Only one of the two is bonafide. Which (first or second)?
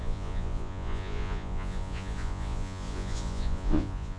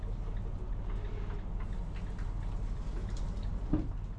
second